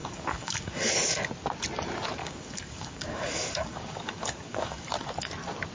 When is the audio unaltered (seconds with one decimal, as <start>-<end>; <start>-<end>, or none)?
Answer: 0.9-2.2; 4.9-5.7